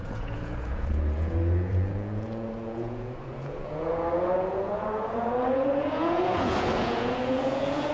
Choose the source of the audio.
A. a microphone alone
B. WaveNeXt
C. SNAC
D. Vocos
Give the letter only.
D